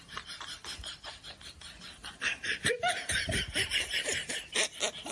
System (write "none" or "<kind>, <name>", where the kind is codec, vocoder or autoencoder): vocoder, BigVGAN v2